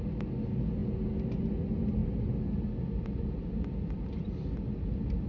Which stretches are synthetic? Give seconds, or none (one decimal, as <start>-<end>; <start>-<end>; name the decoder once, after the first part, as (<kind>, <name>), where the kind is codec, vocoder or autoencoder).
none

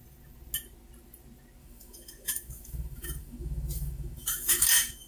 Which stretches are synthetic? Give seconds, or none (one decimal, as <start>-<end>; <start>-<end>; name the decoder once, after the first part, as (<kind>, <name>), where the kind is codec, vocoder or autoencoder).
1.6-5.1 (autoencoder, DAC-VAE)

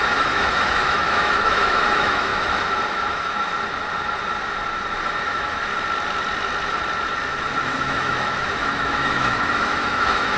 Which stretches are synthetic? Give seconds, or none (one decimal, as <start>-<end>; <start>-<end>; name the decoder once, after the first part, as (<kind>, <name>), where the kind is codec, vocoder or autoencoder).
0.0-2.3 (autoencoder, DAC-VAE); 2.9-3.5; 5.1-5.7; 7.8-10.4

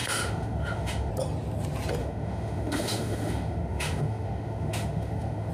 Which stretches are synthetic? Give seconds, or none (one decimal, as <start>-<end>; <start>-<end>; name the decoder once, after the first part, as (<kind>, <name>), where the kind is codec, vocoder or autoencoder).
0.0-1.1 (autoencoder, DAC-VAE); 2.0-5.5

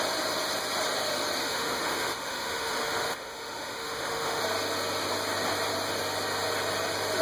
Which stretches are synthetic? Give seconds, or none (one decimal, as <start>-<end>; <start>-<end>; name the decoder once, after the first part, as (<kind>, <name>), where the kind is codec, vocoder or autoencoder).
1.4-4.4 (autoencoder, DAC-VAE)